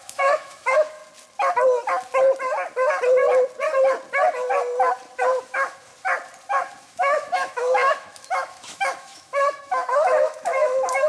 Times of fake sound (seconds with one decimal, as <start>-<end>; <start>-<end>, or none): 0.0-1.0; 5.4-5.9; 6.8-11.1

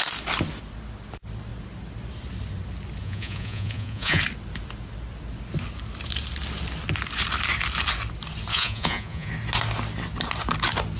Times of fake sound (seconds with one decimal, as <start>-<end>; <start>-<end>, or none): 3.0-4.2; 8.5-9.3

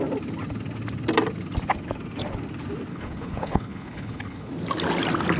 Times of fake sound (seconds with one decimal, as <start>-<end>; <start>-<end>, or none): 2.9-4.5

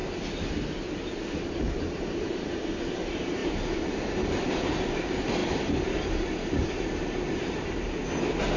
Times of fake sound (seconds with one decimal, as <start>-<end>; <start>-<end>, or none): 1.4-8.6

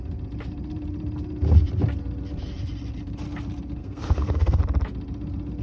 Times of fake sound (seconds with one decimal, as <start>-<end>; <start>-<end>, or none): 3.8-4.6

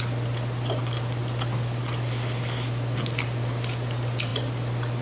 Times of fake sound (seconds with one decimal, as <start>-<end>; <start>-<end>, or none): none